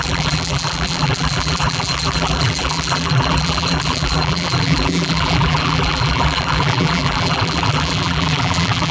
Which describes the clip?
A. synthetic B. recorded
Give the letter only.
A